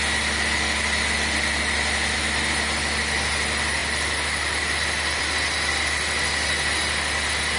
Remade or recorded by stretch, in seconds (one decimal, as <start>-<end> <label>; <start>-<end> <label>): 0.0-7.6 recorded